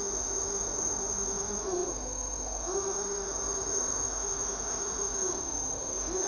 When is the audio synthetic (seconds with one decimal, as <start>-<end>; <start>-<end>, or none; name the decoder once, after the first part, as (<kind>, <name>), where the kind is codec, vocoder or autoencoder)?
0.0-6.3 (autoencoder, DAC-VAE)